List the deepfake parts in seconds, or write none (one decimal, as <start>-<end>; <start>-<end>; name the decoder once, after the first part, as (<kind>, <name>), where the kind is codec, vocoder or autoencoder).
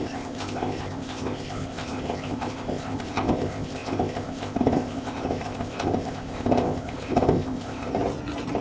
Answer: 0.0-7.9 (codec, ZipCodec)